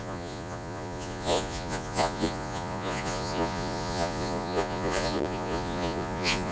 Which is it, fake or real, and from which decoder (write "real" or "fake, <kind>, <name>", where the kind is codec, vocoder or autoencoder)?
fake, vocoder, Vocos